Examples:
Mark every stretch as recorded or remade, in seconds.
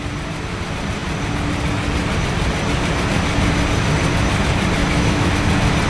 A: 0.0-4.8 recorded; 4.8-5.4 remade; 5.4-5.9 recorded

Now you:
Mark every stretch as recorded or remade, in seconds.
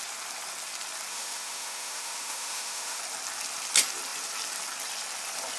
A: 0.0-1.1 recorded; 1.1-3.0 remade; 3.0-5.6 recorded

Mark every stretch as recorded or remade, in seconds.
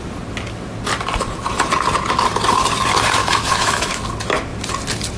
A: 0.0-3.2 recorded; 3.2-4.0 remade; 4.0-5.2 recorded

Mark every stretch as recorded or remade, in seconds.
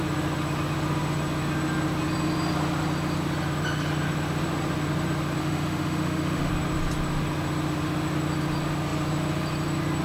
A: 0.0-5.4 recorded; 5.4-6.5 remade; 6.5-10.0 recorded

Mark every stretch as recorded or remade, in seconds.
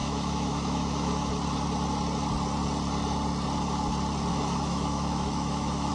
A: 0.0-1.3 remade; 1.3-4.3 recorded; 4.3-5.9 remade